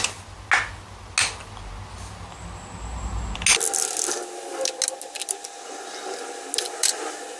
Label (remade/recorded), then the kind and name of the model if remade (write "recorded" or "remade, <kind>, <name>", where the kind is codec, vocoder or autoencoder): recorded